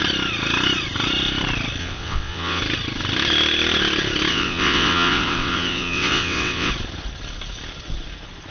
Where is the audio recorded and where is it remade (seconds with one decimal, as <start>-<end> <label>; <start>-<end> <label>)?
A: 0.0-1.8 recorded; 1.8-2.6 remade; 2.6-4.3 recorded; 4.3-6.7 remade; 6.7-8.5 recorded